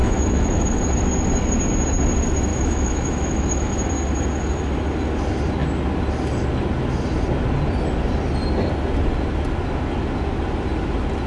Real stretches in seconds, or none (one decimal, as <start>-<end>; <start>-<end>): 0.8-2.5; 3.9-11.3